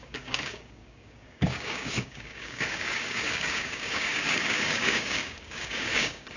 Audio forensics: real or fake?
fake